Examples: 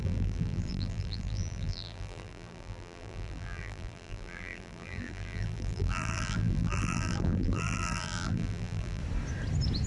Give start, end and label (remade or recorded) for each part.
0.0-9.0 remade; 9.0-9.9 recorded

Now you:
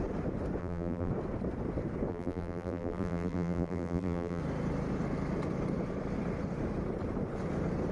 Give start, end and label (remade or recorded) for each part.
0.0-0.6 recorded; 0.6-1.1 remade; 1.1-2.1 recorded; 2.1-4.4 remade; 4.4-7.9 recorded